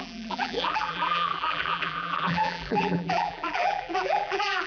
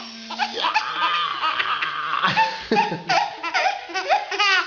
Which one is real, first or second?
second